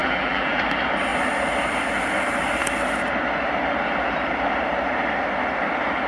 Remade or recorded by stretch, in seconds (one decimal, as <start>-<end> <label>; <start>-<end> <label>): 0.0-0.6 remade; 0.6-6.1 recorded